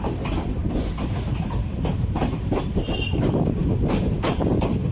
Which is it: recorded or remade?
recorded